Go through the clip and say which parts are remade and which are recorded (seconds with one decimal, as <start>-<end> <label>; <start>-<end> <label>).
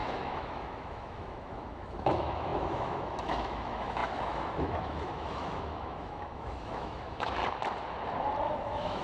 0.0-7.4 remade; 7.4-8.6 recorded; 8.6-9.0 remade